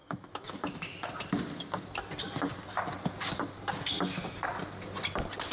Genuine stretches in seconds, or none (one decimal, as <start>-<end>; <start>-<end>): 1.1-5.5